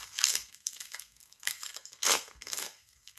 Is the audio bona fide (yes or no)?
no